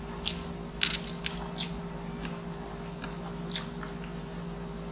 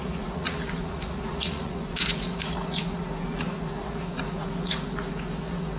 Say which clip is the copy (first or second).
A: second